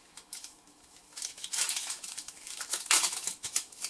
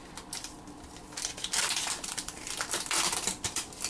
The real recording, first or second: second